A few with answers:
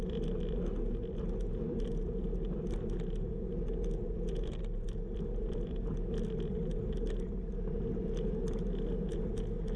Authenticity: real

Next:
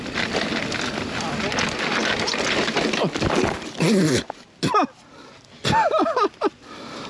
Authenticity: real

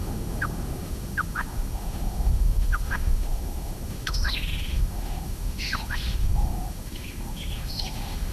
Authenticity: fake